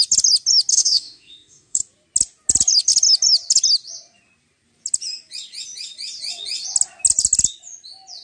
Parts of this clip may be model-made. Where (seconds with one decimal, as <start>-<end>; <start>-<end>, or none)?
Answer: 0.7-1.8